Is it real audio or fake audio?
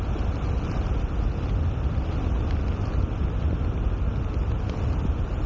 real